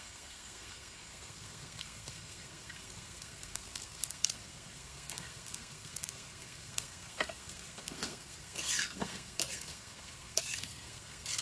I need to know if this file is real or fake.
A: fake